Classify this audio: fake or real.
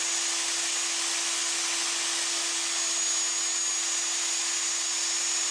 real